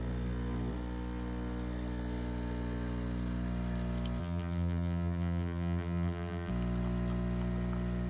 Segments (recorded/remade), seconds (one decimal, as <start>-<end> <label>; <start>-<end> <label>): 0.0-4.2 recorded; 4.2-6.5 remade; 6.5-8.1 recorded